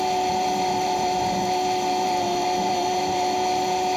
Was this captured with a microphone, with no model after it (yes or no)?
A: no